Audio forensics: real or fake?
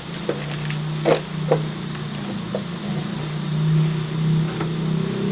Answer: real